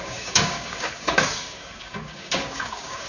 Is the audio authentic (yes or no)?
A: no